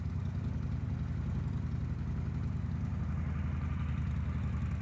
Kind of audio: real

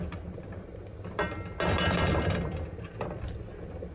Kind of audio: real